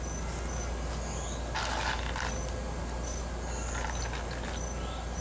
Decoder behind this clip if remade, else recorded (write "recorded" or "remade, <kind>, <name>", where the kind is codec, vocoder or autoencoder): recorded